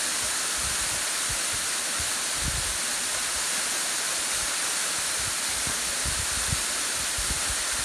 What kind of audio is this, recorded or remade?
recorded